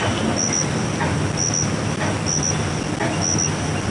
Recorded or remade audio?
recorded